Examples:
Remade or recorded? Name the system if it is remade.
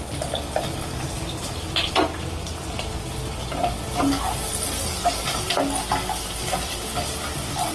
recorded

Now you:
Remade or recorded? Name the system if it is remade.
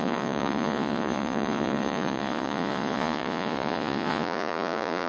remade, vocoder, Vocos